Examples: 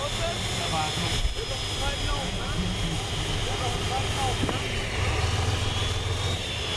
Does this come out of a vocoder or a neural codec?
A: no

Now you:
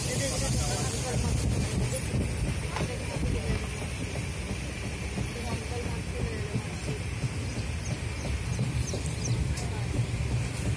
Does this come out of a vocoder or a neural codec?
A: no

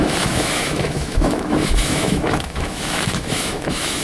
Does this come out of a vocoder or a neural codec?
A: yes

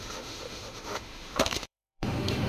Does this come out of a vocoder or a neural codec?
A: yes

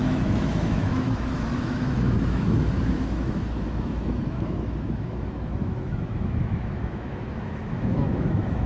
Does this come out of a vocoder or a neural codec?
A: yes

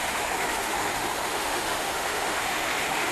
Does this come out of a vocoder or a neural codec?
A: yes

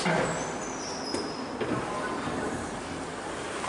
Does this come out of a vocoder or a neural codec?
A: no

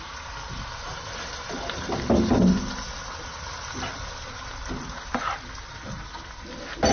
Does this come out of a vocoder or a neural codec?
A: no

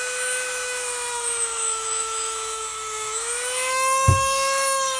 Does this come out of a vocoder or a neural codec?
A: yes